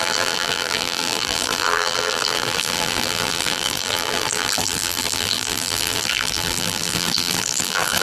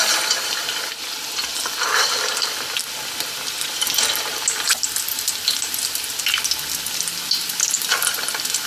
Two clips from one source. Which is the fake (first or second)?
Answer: first